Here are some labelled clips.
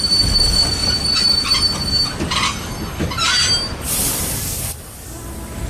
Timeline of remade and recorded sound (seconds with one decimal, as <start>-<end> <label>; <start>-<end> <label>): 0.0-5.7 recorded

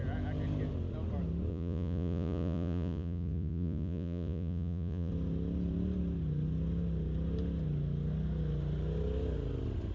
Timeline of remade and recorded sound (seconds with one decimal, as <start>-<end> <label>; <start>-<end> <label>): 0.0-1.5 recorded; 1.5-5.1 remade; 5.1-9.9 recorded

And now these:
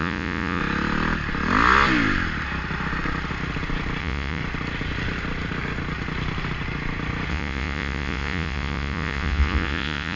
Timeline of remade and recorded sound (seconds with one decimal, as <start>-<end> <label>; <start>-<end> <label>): 0.0-0.6 remade; 0.6-4.0 recorded; 4.0-4.4 remade; 4.4-7.3 recorded; 7.3-10.2 remade

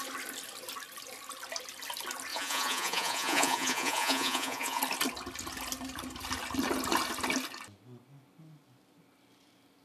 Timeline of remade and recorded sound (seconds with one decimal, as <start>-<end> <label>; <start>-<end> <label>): 0.0-2.3 recorded; 2.3-4.8 remade; 4.8-9.8 recorded

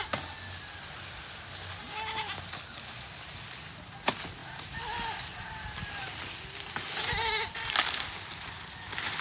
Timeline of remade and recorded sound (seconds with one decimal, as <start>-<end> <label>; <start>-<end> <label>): 0.0-9.2 recorded

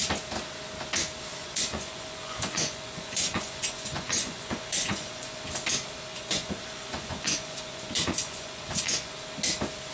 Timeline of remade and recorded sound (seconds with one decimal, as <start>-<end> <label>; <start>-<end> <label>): 0.0-1.3 recorded; 1.3-5.4 remade; 5.4-6.1 recorded; 6.1-9.1 remade; 9.1-9.9 recorded

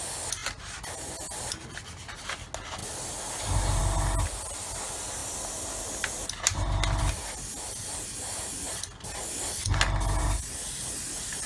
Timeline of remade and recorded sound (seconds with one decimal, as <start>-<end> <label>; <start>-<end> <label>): 0.0-11.5 recorded